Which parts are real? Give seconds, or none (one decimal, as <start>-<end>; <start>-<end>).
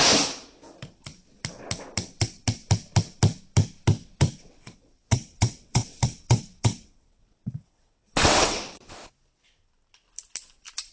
0.0-4.0; 8.8-10.9